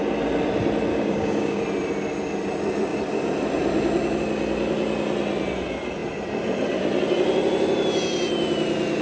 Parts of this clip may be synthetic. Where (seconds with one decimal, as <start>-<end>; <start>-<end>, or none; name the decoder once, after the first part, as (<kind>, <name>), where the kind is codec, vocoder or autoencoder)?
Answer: 0.9-1.6 (codec, DAC)